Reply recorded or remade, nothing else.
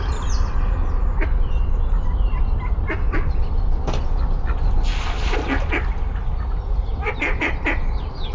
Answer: recorded